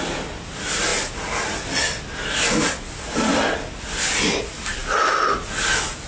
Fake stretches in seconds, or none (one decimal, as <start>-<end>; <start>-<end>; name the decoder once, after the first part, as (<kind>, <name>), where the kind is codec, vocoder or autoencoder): none